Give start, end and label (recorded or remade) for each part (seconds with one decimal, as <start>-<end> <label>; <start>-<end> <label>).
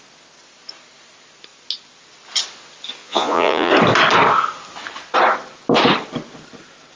0.0-3.0 recorded; 3.0-3.7 remade; 3.7-7.0 recorded